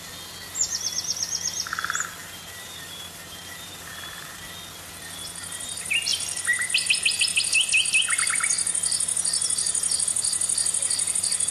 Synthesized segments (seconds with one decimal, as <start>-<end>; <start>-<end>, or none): 2.2-4.5